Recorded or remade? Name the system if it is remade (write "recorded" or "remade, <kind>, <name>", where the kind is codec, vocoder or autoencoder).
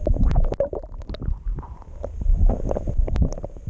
recorded